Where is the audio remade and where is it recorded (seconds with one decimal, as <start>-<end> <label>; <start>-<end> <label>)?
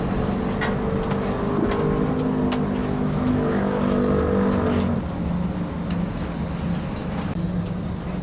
0.0-2.8 recorded; 2.8-3.8 remade; 3.8-8.2 recorded